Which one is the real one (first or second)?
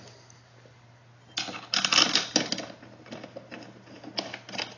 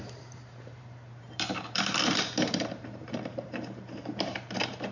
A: first